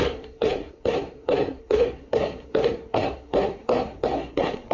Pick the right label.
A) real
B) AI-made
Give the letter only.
B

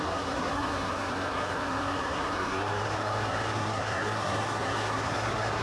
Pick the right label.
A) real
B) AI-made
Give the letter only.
B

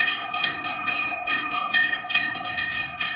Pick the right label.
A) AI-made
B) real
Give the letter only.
A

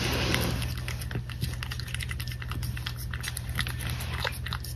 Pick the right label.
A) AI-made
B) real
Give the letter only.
B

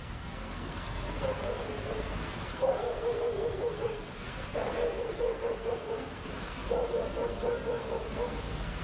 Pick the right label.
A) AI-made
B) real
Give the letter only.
A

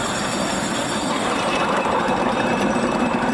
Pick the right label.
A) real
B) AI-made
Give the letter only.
A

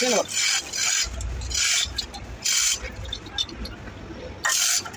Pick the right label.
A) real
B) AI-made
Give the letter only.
A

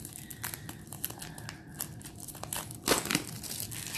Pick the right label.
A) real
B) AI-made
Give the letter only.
A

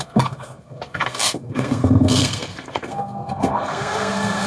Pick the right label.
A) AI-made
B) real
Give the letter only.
A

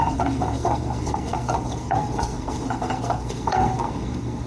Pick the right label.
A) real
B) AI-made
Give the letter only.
B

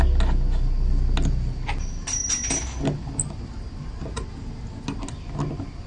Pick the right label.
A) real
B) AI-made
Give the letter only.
A